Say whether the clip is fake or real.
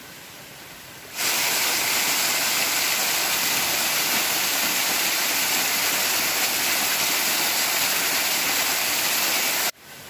real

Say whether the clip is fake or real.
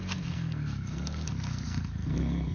fake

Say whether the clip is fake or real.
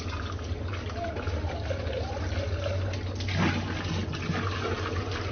real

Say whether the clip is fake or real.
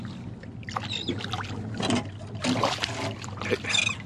real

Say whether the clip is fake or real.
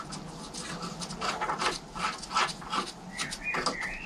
real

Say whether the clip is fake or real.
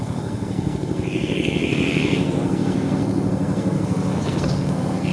fake